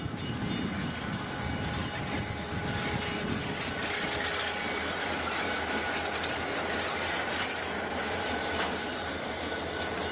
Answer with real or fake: real